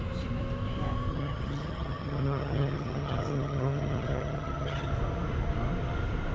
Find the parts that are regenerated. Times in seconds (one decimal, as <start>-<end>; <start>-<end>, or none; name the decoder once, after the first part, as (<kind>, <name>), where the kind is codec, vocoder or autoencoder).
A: 1.1-4.9 (vocoder, HiFi-GAN)